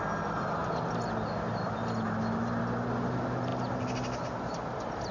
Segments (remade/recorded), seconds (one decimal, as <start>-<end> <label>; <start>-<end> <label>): 0.0-5.1 recorded